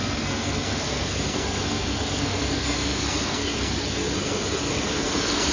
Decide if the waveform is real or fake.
fake